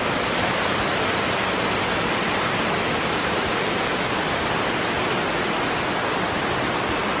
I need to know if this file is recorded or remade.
recorded